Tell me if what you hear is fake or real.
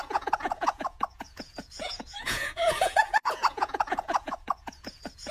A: fake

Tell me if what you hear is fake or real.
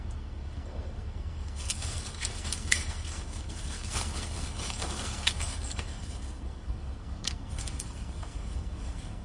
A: fake